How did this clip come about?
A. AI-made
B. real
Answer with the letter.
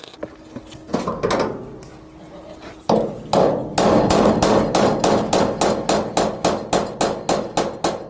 B